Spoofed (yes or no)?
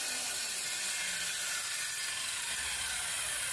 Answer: no